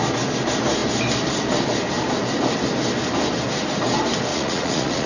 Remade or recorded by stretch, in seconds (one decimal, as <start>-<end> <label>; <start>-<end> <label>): 0.0-4.3 recorded; 4.3-5.1 remade